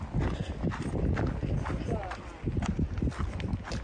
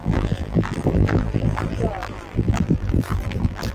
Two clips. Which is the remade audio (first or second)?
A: second